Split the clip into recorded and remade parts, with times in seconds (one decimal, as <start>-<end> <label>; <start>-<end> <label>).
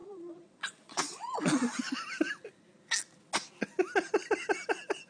0.0-1.8 remade; 1.8-5.1 recorded